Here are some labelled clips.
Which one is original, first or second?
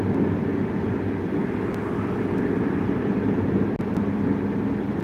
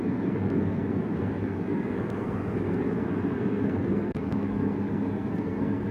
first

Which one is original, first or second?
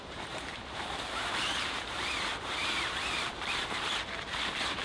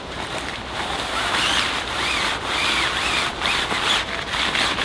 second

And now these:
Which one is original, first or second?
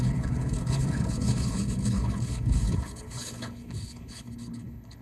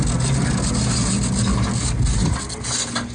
second